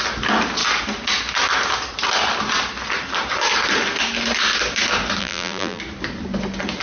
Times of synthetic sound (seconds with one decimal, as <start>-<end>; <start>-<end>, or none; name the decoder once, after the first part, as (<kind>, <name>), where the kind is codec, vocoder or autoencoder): 5.2-5.8 (vocoder, BigVGAN v2)